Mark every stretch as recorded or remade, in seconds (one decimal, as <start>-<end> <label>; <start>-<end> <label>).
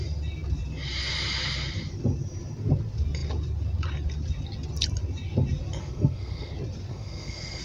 0.0-5.8 recorded; 5.8-6.5 remade; 6.5-6.9 recorded; 6.9-7.6 remade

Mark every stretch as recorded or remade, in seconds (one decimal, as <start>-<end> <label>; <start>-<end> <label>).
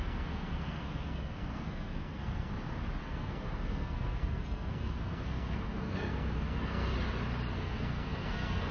0.0-2.5 remade; 2.5-3.0 recorded; 3.0-6.9 remade; 6.9-7.5 recorded; 7.5-8.7 remade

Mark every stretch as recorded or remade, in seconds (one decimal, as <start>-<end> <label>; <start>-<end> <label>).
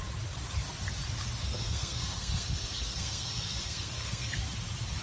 0.0-1.4 recorded; 1.4-4.4 remade; 4.4-5.0 recorded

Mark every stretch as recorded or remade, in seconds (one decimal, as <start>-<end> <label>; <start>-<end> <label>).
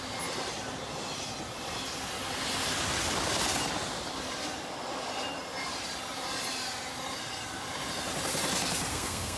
0.0-8.9 recorded; 8.9-9.4 remade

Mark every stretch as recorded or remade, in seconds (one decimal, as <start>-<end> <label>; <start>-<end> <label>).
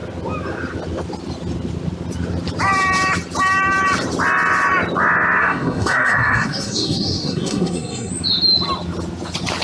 0.0-5.4 recorded; 5.4-8.1 remade; 8.1-9.6 recorded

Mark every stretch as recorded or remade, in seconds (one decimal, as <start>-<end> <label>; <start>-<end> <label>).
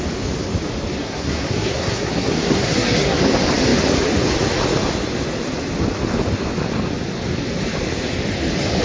0.0-1.0 recorded; 1.0-3.2 remade; 3.2-8.8 recorded